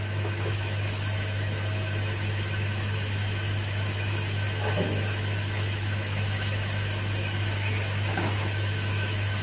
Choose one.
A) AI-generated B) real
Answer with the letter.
A